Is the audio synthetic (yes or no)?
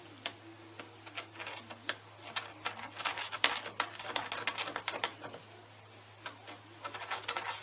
no